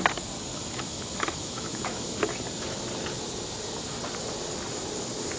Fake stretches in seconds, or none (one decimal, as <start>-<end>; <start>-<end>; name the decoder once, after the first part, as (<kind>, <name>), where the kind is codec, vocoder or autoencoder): 0.5-2.2 (autoencoder, DAC-VAE)